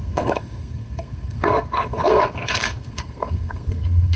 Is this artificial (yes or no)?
yes